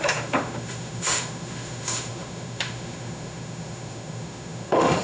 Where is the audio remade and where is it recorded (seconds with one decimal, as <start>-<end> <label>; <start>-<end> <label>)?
0.0-5.0 remade